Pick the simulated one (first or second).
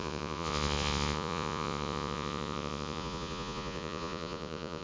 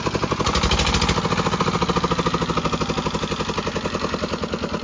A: first